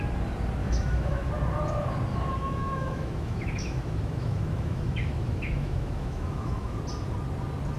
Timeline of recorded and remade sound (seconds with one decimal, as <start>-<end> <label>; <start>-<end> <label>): 0.0-0.6 recorded; 0.6-1.3 remade; 1.3-2.1 recorded; 2.1-6.8 remade; 6.8-7.8 recorded